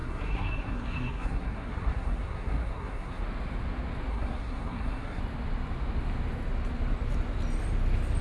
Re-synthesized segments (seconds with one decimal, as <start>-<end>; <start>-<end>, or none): 0.0-3.2; 4.1-5.2